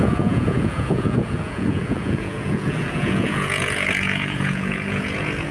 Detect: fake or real fake